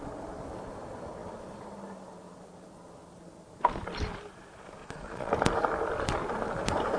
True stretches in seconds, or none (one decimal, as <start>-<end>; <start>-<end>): 0.0-4.8; 5.3-7.0